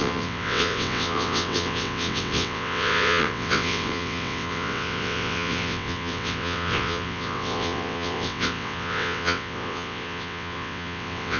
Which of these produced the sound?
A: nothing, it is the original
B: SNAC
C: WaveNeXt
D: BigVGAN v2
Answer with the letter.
C